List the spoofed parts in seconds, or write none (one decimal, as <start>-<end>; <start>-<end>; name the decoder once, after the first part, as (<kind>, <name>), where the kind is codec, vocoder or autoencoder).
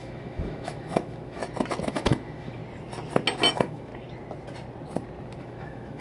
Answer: 0.0-1.4 (autoencoder, DAC-VAE); 1.9-2.6; 3.5-3.9; 5.4-6.0